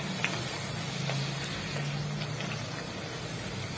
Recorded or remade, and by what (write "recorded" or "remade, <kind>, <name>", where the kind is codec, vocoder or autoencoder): recorded